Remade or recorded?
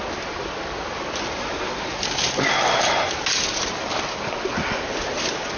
recorded